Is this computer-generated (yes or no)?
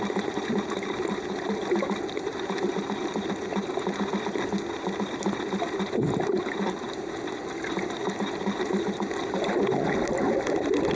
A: no